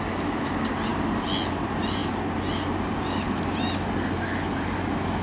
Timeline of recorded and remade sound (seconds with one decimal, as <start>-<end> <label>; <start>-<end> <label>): 0.0-5.2 recorded